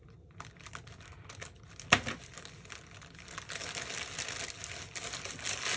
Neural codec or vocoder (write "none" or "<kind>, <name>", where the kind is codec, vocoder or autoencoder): none